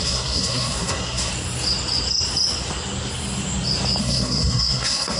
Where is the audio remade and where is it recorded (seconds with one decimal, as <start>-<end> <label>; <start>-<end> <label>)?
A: 0.0-1.3 remade; 1.3-4.0 recorded; 4.0-5.2 remade